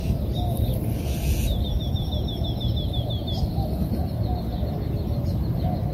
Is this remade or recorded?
recorded